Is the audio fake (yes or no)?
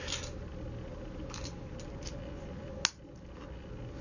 no